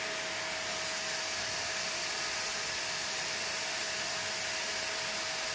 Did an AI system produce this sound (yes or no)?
no